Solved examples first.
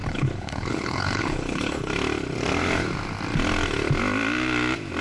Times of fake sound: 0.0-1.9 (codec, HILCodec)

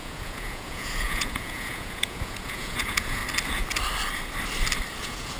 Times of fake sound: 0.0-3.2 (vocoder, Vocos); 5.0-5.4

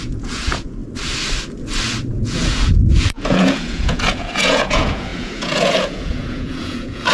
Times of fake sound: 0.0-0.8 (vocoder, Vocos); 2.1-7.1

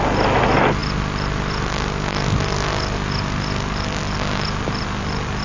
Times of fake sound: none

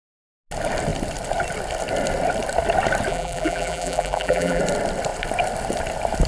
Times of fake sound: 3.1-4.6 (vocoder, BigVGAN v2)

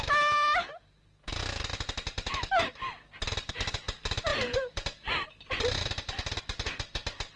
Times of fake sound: none

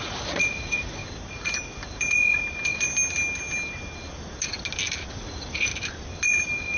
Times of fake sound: 0.0-1.0 (vocoder, Vocos); 5.1-5.7